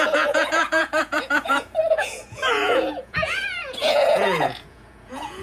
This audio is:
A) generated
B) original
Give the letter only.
A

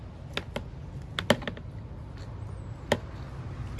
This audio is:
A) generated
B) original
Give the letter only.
B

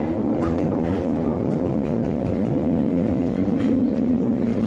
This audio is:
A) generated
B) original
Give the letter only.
A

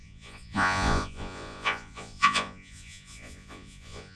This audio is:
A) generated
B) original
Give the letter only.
A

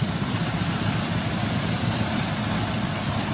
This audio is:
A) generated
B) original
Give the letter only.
B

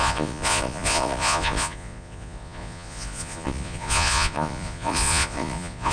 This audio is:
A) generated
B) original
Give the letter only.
A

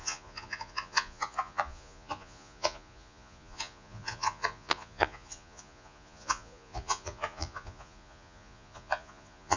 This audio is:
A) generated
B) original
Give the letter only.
A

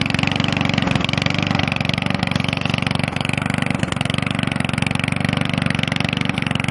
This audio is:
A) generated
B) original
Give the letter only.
B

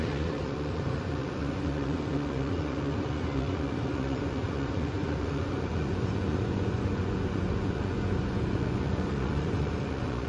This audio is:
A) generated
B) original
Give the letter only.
A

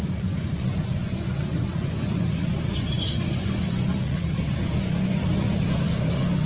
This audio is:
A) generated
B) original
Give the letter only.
A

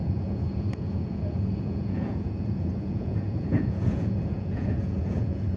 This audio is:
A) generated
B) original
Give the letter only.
A